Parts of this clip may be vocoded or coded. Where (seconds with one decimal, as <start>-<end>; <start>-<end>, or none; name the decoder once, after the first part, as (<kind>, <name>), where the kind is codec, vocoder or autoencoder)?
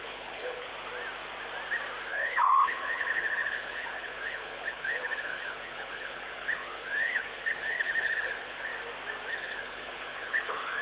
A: 0.0-0.7 (codec, HILCodec); 2.1-8.7; 9.3-10.8